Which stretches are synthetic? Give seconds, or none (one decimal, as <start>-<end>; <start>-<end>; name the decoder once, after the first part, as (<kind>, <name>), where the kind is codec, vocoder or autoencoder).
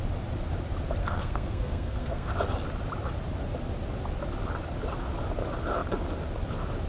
1.0-2.3 (codec, SNAC)